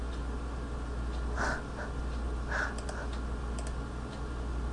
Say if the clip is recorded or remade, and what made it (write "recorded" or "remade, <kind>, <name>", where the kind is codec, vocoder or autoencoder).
recorded